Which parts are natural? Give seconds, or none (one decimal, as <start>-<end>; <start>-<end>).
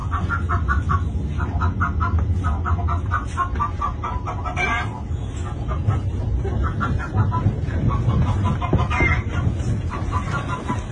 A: 0.0-10.9